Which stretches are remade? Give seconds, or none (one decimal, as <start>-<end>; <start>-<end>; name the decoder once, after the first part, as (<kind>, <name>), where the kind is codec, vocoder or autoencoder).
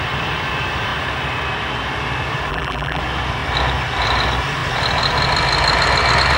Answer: 2.5-3.0 (vocoder, BigVGAN v2)